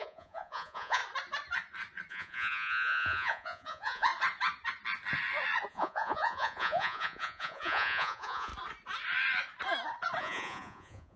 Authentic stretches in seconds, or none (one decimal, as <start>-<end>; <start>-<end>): 1.0-2.1; 4.1-5.7; 8.5-10.2